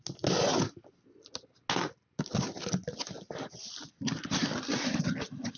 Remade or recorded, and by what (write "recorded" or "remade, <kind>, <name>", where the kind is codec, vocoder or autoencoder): recorded